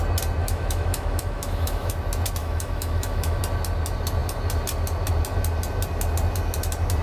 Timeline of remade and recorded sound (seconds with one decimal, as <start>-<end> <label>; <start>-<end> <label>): 0.0-0.4 recorded; 0.4-1.9 remade; 1.9-2.4 recorded; 2.4-3.4 remade; 3.4-7.0 recorded